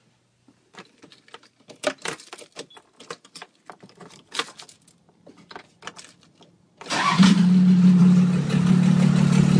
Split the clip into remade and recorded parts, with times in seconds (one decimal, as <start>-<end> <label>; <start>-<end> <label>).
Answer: 0.0-9.6 recorded